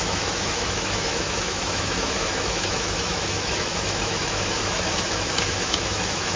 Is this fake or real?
fake